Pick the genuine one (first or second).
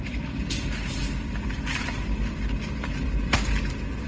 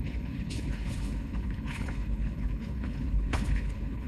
first